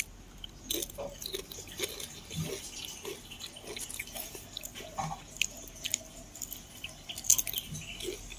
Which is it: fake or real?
real